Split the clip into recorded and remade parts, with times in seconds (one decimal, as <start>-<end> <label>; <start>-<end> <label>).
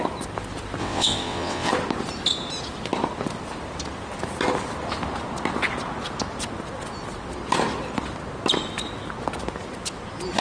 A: 0.0-0.8 recorded; 0.8-1.7 remade; 1.7-10.4 recorded